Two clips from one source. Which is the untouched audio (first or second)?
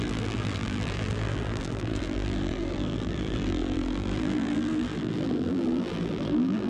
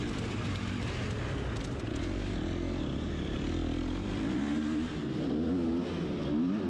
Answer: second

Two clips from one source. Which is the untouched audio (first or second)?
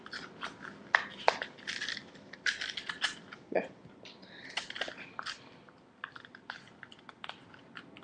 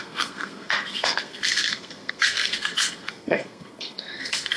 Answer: first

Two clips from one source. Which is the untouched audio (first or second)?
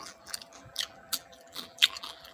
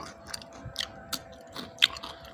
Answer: second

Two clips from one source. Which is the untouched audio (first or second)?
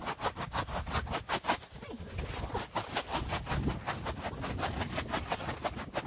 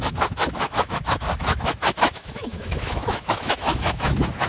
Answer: first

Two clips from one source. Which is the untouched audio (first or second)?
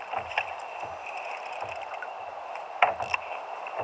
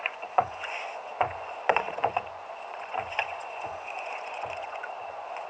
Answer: first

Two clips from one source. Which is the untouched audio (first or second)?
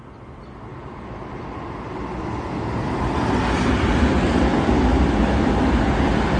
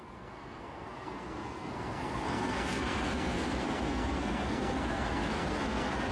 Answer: first